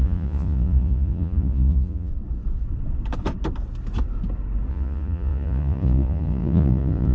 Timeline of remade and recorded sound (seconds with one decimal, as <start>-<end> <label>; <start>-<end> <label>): 0.0-2.1 remade; 2.1-4.7 recorded; 4.7-7.1 remade